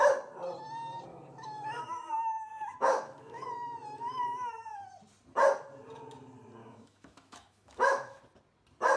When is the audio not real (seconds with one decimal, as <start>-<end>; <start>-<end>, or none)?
1.1-4.8; 6.6-8.2